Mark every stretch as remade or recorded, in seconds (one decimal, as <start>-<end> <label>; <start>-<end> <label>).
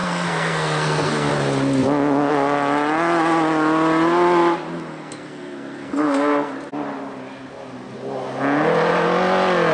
0.0-1.3 remade; 1.3-4.9 recorded; 4.9-6.5 remade; 6.5-9.7 recorded